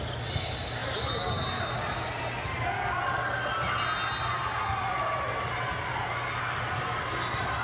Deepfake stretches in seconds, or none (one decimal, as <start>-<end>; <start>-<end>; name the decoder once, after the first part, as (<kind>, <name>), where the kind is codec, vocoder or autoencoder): none